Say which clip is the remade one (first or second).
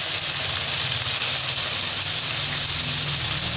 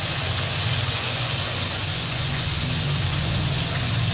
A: second